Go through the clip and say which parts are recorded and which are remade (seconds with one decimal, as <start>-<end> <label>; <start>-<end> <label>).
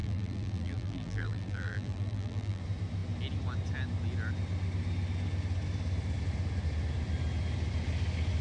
0.0-2.6 remade; 2.6-8.4 recorded